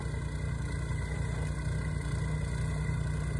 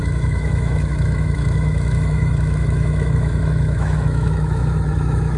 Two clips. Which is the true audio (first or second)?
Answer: first